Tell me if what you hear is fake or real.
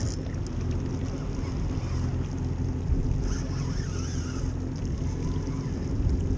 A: real